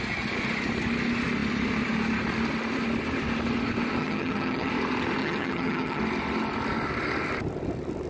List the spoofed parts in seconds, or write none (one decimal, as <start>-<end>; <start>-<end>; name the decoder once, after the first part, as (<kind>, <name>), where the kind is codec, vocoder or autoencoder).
4.0-4.7 (vocoder, HiFi-GAN); 5.2-6.0